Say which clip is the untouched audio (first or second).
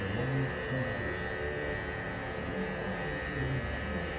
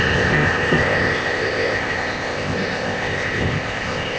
first